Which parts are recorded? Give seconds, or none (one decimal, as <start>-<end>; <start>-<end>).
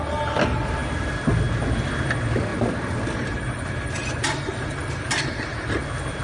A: 0.0-6.2